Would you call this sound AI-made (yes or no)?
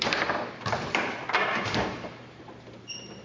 yes